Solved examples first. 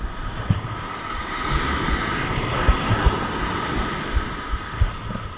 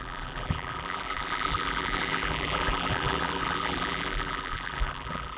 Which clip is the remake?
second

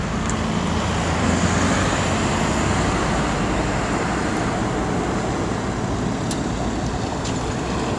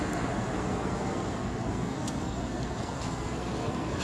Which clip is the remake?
second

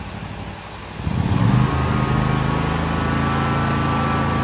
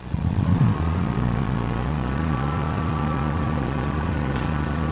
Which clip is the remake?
second